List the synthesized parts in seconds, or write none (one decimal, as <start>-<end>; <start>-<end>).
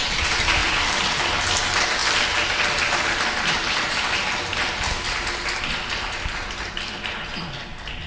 0.6-1.2; 2.0-5.6